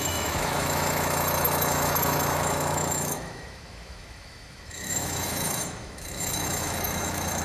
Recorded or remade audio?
remade